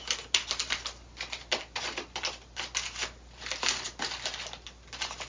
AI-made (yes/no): no